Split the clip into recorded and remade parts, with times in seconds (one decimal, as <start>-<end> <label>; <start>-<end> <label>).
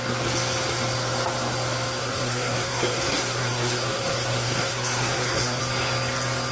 0.0-2.0 recorded; 2.0-5.6 remade; 5.6-6.5 recorded